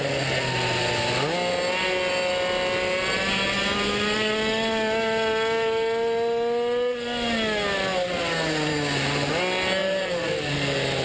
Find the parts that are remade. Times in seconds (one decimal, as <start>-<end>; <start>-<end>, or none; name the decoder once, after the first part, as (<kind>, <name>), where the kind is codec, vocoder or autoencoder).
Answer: 9.8-10.5 (vocoder, BigVGAN v2)

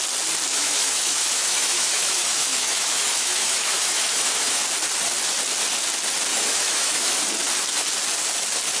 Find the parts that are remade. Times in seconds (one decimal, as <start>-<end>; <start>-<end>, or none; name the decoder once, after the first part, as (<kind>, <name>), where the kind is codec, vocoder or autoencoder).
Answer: 0.5-4.6 (autoencoder, DAC-VAE); 6.3-7.2

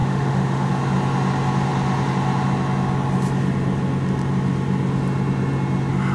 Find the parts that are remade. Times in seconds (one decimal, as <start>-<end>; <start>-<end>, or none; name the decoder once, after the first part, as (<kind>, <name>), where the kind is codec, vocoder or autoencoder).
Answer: 0.0-0.7 (autoencoder, DAC-VAE)

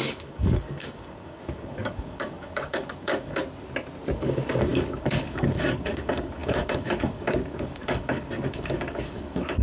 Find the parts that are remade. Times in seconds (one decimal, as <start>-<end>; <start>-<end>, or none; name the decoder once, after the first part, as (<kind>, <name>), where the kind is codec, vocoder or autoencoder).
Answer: 0.0-3.4 (codec, DAC); 4.2-9.6

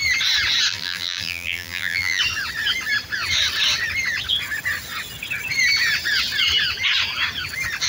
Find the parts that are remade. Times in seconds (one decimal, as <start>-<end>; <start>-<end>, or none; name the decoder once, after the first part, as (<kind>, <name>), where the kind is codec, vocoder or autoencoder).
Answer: 0.7-2.2 (vocoder, BigVGAN v2)